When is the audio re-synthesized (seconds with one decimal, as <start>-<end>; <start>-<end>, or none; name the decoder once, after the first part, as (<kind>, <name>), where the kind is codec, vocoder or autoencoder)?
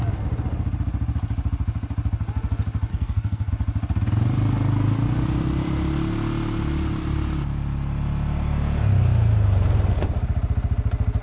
2.9-3.5 (codec, SNAC)